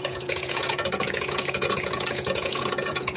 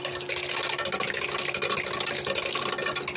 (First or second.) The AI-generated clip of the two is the first